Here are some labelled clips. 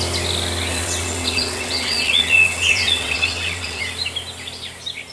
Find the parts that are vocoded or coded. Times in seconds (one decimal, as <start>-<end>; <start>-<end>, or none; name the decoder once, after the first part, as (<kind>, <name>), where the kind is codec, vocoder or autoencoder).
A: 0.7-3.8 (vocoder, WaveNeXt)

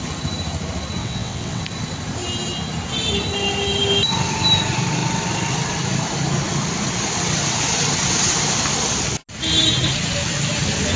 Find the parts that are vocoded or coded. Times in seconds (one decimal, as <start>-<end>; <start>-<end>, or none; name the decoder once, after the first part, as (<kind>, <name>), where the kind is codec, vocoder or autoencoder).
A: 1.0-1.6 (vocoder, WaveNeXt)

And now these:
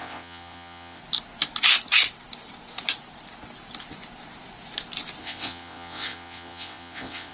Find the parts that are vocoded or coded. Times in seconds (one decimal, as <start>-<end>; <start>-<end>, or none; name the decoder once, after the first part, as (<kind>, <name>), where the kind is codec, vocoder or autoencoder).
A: 0.0-1.0 (vocoder, WaveNeXt); 5.2-7.3

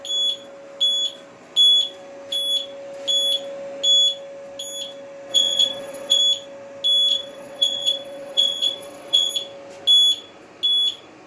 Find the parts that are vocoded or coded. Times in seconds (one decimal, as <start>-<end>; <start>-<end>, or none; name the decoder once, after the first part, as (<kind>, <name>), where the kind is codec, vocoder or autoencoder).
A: 5.3-6.2 (vocoder, WaveNeXt); 7.1-9.3

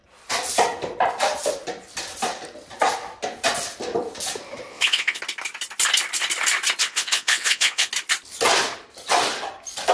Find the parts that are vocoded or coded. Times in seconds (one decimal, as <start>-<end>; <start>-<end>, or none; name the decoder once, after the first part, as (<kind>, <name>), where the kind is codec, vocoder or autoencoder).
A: 4.7-5.2 (vocoder, WaveNeXt); 6.8-7.9

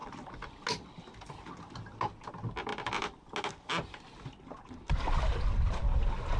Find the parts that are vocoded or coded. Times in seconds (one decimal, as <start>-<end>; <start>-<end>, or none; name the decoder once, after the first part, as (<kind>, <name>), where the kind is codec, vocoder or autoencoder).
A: none

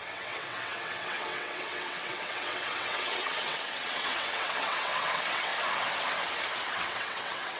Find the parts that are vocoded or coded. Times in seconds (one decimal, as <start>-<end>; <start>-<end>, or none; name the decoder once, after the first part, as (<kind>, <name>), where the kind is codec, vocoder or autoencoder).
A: 0.0-5.5 (vocoder, WaveNeXt); 6.7-7.6